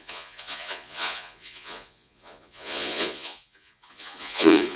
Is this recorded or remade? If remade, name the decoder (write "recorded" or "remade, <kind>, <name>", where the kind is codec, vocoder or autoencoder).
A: remade, vocoder, Vocos